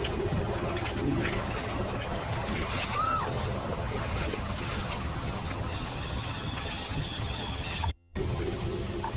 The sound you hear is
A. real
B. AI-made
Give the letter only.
B